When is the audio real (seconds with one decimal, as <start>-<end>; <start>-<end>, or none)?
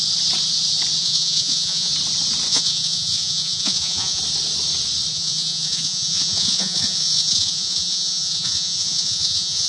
0.0-1.0; 1.9-2.5; 4.2-5.1